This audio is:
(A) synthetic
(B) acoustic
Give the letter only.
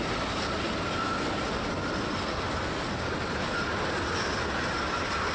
B